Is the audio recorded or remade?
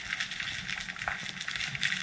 recorded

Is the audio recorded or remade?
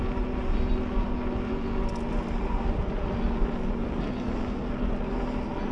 recorded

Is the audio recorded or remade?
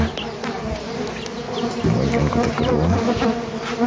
recorded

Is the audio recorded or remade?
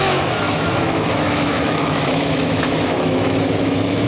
remade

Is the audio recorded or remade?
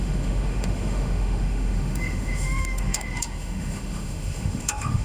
remade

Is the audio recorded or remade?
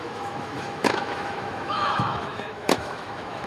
remade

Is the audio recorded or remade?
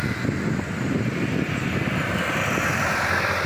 recorded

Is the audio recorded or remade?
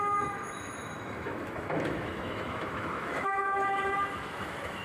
remade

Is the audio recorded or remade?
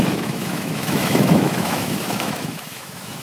remade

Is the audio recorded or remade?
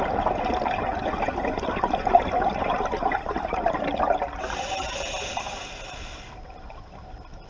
recorded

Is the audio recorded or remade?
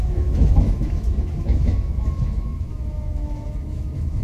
remade